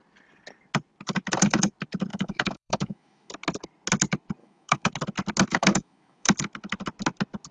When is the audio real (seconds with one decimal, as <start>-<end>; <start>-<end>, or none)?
0.0-2.1; 3.3-4.4; 4.9-5.5; 6.3-7.5